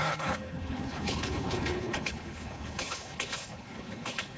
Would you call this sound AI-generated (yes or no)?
yes